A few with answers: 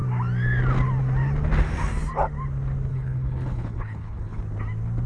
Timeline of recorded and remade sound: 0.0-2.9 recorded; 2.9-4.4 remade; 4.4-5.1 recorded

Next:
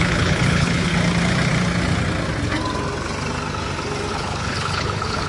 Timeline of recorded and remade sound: 0.0-0.9 remade; 0.9-4.1 recorded; 4.1-5.3 remade

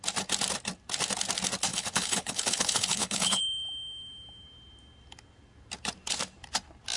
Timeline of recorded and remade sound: 0.0-1.7 recorded; 1.7-3.4 remade; 3.4-7.0 recorded

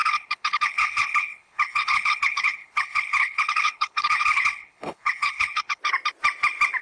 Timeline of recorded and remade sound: 0.0-5.8 remade; 5.8-6.8 recorded